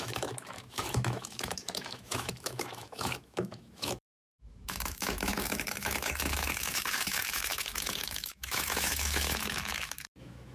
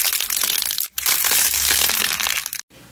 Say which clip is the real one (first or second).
second